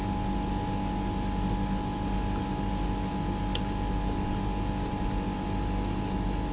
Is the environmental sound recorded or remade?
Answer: recorded